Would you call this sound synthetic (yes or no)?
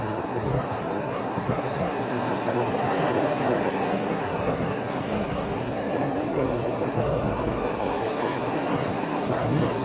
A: yes